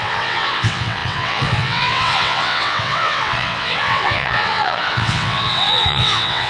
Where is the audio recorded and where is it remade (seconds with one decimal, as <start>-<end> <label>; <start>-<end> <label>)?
0.0-6.5 remade